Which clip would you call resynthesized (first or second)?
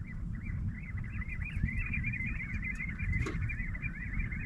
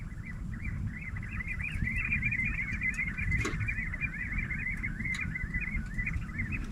first